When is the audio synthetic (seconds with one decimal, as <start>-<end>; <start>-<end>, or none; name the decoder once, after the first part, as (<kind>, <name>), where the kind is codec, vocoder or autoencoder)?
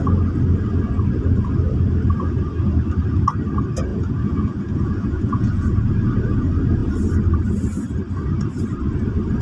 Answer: 3.9-5.9 (vocoder, Vocos)